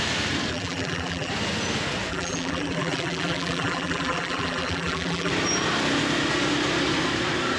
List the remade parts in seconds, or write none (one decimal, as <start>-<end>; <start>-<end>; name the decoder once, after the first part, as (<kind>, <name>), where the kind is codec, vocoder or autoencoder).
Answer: 0.5-1.3 (vocoder, BigVGAN v2); 2.1-5.3